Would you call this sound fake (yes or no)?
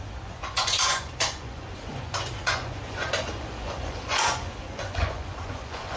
yes